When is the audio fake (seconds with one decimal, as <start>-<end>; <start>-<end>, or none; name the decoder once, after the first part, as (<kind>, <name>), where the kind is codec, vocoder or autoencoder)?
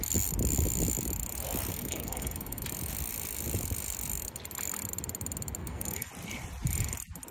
1.7-2.6 (codec, SNAC); 5.6-6.1